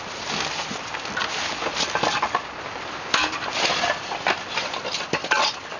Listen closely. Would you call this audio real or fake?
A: real